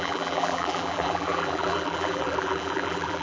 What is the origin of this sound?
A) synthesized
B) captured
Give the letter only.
A